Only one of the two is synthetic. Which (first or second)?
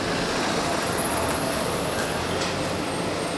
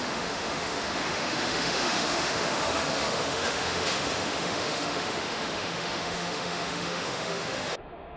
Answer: second